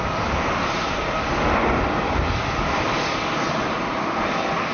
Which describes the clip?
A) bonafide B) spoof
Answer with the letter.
A